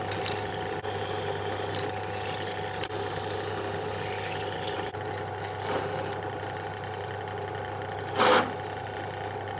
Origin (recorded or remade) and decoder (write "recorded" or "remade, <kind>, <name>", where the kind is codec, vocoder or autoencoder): recorded